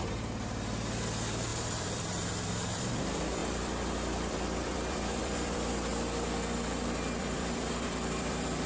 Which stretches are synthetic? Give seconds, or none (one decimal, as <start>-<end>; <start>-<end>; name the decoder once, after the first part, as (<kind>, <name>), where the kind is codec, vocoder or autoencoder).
0.0-5.9 (vocoder, BigVGAN v2); 7.2-8.7